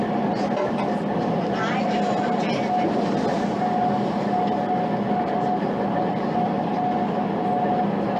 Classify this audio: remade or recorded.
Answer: recorded